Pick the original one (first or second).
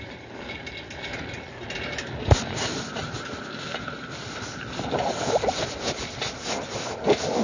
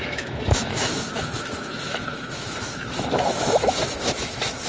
first